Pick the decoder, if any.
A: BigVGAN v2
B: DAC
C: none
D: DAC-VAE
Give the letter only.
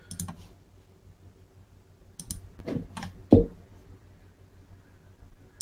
C